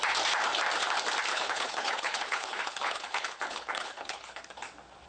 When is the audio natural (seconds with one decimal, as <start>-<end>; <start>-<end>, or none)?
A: 0.0-1.3; 4.4-5.1